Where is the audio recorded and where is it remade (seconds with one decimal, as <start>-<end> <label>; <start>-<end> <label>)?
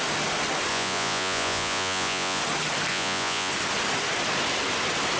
0.0-0.7 recorded; 0.7-2.4 remade; 2.4-2.9 recorded; 2.9-3.5 remade; 3.5-5.2 recorded